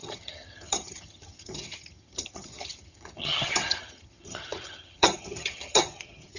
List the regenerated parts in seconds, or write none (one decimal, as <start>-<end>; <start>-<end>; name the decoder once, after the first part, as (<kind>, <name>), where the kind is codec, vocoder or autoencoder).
0.0-6.4 (vocoder, HiFi-GAN)